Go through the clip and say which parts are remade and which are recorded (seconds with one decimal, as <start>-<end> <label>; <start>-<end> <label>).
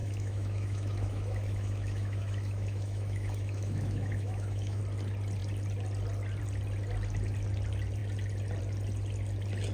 0.0-4.8 remade; 4.8-9.7 recorded